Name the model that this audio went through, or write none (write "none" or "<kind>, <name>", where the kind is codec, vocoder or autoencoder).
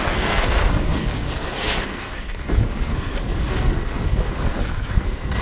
codec, SNAC